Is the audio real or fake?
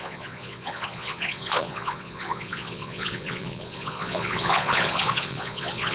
fake